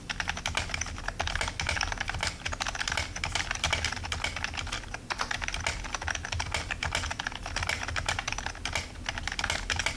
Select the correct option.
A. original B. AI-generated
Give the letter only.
A